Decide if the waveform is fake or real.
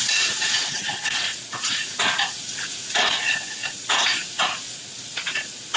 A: fake